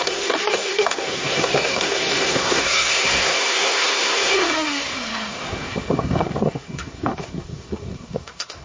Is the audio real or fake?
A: fake